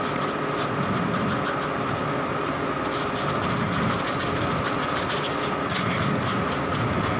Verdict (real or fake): real